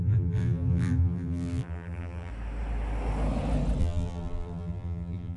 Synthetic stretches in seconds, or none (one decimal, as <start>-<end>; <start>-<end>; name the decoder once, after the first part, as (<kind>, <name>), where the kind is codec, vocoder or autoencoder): 0.0-2.3 (vocoder, BigVGAN v2); 3.8-5.4